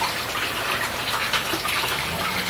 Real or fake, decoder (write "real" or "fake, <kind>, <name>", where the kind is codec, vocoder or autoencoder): real